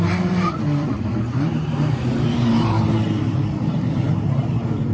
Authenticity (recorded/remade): remade